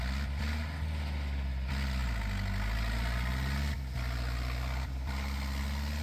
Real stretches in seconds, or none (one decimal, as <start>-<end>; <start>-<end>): 0.0-6.0

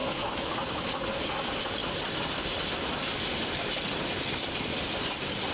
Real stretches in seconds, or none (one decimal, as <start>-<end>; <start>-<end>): 0.5-5.5

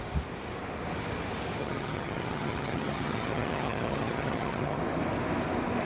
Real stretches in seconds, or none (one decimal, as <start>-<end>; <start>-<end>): 0.0-1.6; 4.8-5.8

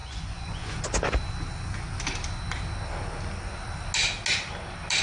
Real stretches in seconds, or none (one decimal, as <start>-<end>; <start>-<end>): 0.8-5.0

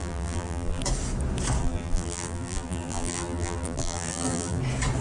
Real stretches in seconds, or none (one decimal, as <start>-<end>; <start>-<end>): 0.8-1.6; 4.6-5.0